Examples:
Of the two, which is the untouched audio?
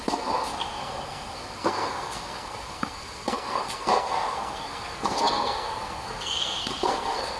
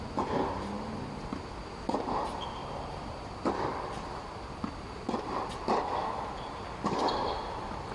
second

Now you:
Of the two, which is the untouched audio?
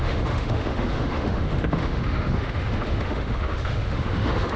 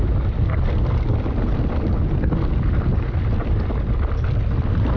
second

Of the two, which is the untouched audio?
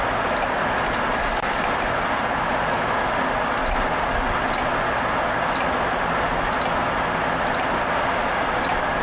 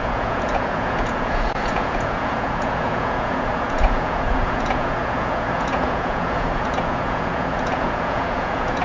first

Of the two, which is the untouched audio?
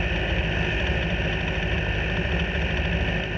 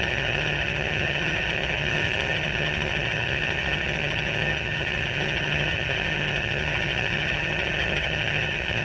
first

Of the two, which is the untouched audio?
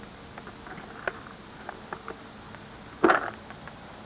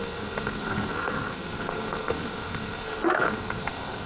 first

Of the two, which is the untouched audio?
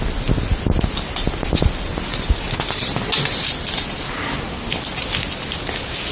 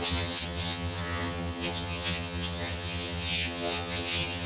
first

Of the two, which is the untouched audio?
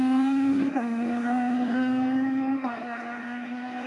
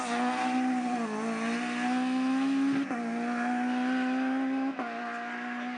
second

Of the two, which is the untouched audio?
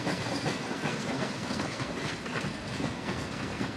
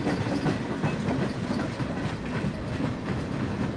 second